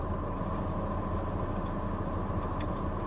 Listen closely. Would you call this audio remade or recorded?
recorded